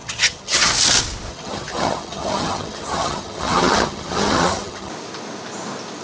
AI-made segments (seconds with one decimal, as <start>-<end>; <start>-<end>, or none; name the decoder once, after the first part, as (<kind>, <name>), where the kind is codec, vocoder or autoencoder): 0.0-0.7 (vocoder, HiFi-GAN); 1.3-4.9